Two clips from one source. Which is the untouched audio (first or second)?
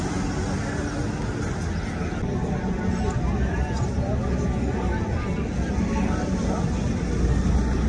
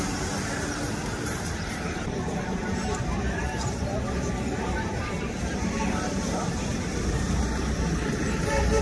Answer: first